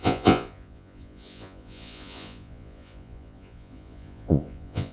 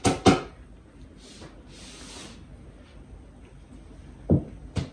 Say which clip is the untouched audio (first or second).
second